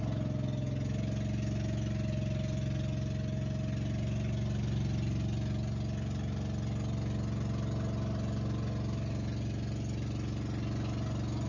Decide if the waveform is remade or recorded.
recorded